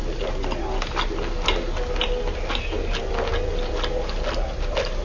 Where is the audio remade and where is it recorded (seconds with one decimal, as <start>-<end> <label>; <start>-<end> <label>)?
0.0-5.0 recorded